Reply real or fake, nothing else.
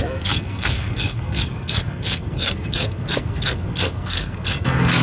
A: fake